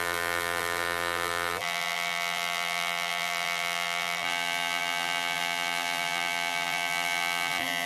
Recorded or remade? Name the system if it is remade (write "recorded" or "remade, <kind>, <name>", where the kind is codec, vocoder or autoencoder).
remade, vocoder, BigVGAN v2